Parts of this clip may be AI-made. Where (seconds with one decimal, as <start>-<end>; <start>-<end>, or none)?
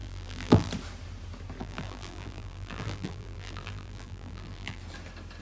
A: 0.0-0.7; 1.6-4.8